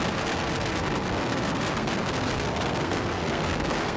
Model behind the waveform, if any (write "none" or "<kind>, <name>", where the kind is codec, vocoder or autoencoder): codec, SNAC